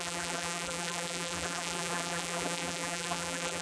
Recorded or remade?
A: remade